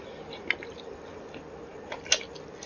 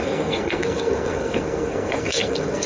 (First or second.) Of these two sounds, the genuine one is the first